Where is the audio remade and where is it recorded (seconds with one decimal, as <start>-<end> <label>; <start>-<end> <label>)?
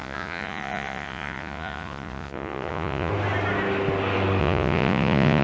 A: 0.0-3.1 remade; 3.1-4.4 recorded; 4.4-5.4 remade